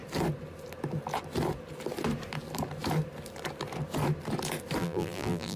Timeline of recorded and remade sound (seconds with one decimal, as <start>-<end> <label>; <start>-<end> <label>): 0.0-4.8 recorded; 4.8-5.6 remade